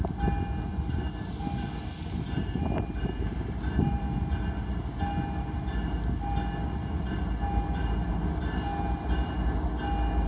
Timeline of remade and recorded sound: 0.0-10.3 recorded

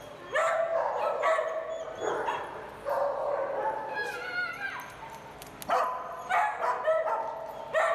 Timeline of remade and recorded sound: 0.0-7.9 recorded